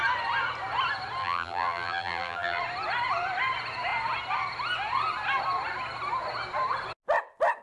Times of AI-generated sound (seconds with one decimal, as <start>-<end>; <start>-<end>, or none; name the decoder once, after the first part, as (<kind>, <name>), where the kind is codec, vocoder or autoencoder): 1.2-2.6 (vocoder, BigVGAN v2)